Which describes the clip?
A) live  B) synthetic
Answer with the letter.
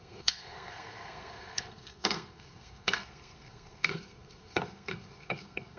B